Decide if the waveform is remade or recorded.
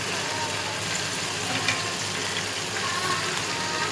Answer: recorded